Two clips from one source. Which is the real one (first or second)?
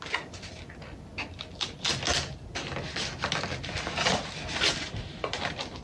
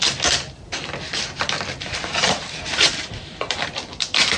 first